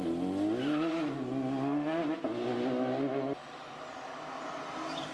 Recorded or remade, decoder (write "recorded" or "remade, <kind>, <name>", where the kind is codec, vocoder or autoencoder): recorded